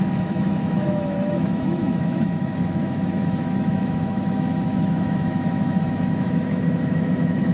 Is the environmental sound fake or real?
fake